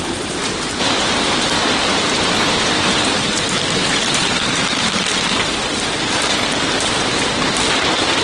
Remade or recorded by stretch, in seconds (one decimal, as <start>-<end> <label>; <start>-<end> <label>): 0.0-5.1 remade; 5.1-7.7 recorded; 7.7-8.2 remade